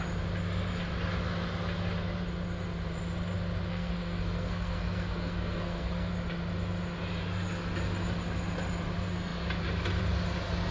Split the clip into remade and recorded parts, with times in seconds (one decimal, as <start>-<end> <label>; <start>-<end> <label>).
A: 0.0-3.7 recorded; 3.7-6.1 remade; 6.1-10.7 recorded